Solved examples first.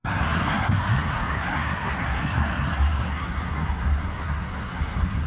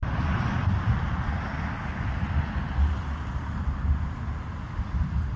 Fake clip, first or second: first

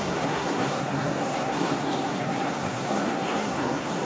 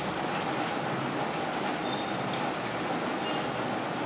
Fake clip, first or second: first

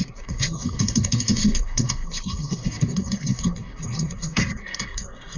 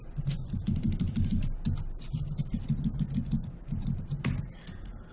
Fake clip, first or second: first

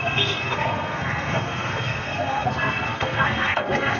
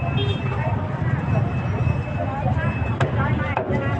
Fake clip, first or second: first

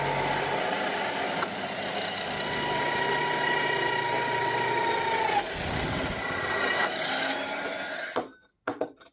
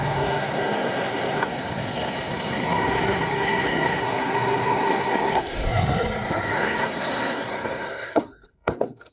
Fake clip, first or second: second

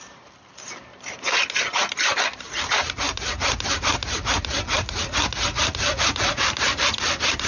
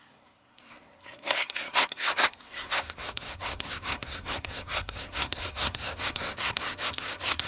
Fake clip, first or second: second